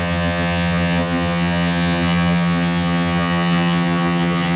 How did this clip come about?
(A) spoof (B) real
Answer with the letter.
A